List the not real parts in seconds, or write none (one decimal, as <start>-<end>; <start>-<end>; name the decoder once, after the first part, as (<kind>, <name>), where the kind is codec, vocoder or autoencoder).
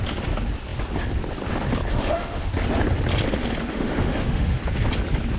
1.9-2.5 (autoencoder, DAC-VAE); 3.7-4.6